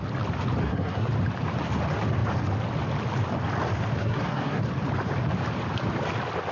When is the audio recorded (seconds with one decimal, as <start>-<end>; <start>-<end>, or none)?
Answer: 0.0-0.6; 1.1-4.0; 4.6-6.5